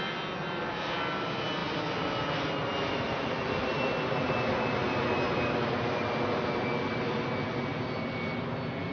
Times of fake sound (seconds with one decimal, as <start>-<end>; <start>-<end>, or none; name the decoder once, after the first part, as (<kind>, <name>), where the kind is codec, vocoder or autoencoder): none